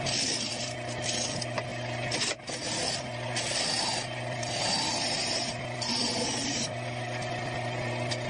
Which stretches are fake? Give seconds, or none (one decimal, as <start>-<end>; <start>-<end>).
none

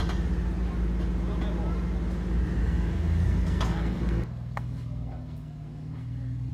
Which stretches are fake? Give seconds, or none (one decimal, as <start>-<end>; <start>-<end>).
2.6-6.5